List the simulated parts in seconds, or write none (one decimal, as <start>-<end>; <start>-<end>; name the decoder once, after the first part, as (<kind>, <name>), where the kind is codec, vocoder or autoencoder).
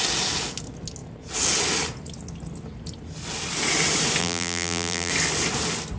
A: 4.2-5.1 (vocoder, BigVGAN v2)